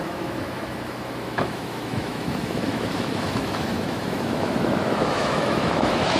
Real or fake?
fake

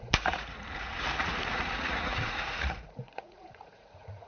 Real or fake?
fake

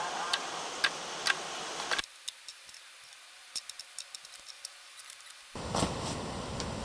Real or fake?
real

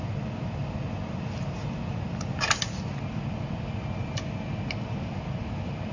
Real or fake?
real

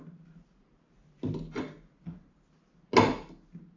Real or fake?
real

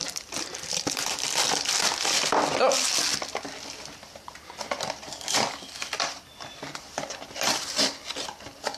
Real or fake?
fake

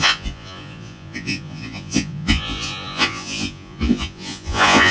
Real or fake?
fake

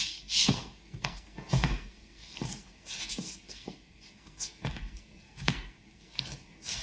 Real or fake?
fake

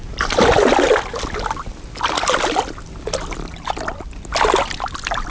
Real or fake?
real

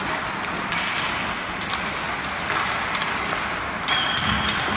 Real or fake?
real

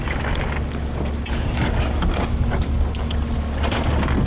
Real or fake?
real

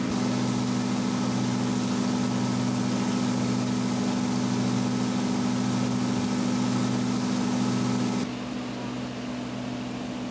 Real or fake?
real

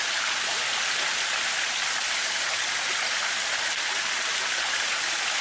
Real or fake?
real